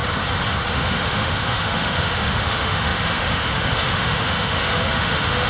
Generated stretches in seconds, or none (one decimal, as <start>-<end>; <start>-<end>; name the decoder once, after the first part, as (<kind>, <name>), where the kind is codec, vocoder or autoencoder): 0.7-5.5 (autoencoder, DAC-VAE)